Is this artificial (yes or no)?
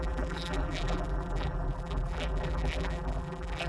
yes